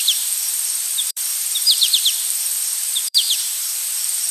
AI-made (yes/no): yes